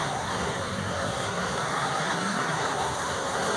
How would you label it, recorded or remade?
remade